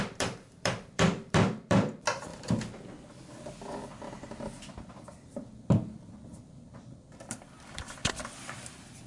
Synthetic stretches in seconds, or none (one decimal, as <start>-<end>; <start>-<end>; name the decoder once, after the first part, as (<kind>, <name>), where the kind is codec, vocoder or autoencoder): 0.0-2.3 (vocoder, BigVGAN v2); 4.8-9.1